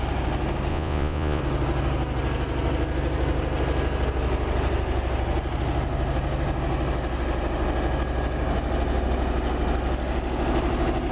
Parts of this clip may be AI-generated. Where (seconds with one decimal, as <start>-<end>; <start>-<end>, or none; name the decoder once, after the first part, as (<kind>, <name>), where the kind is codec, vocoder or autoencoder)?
0.7-1.4 (vocoder, Vocos)